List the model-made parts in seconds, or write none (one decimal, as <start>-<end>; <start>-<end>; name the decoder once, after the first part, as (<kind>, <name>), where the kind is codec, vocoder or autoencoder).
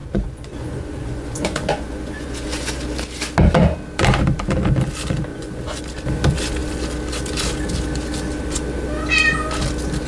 0.0-2.7 (vocoder, Vocos); 5.3-5.8